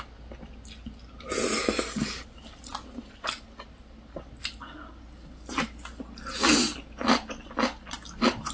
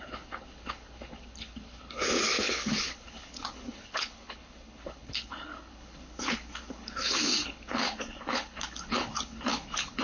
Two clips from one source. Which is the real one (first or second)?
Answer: first